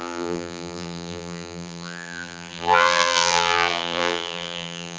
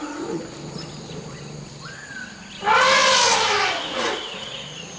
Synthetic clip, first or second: first